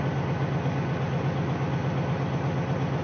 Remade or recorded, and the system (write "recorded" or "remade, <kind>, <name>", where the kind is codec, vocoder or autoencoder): recorded